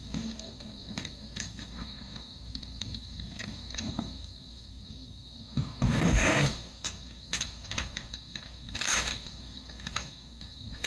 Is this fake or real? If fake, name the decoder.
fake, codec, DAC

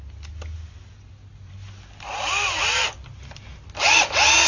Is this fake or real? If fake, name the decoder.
real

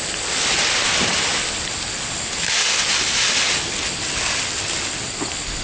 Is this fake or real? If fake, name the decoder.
real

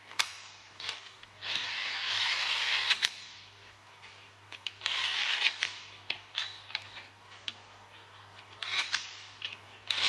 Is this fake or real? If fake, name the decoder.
fake, codec, DAC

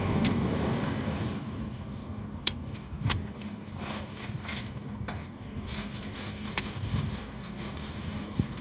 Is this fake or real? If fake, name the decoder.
fake, codec, DAC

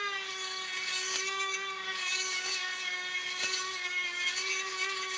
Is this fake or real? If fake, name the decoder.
fake, codec, DAC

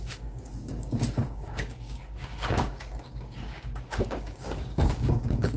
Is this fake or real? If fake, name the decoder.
fake, codec, DAC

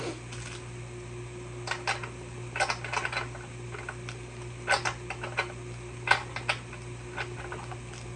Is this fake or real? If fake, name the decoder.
real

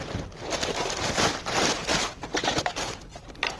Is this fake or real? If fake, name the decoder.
real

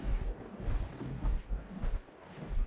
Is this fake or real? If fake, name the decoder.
fake, codec, DAC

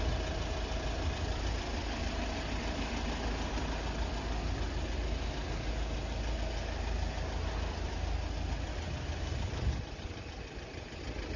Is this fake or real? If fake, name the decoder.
real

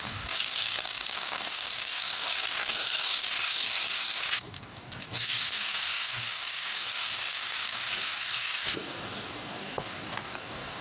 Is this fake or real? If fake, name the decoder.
fake, codec, DAC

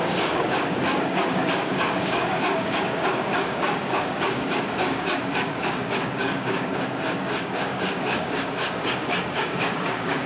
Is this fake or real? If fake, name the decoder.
fake, codec, DAC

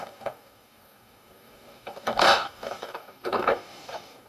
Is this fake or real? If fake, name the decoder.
fake, codec, DAC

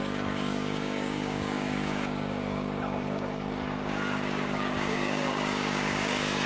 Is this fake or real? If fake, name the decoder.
fake, codec, DAC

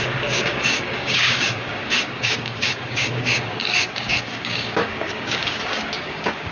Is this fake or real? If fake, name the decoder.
fake, codec, DAC